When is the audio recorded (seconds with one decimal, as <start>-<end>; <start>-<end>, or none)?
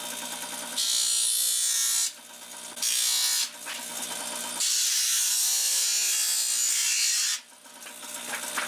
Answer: 0.0-8.7